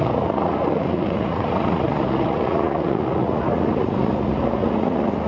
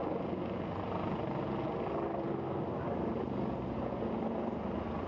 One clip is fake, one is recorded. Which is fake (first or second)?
first